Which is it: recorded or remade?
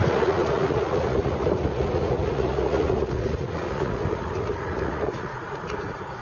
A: remade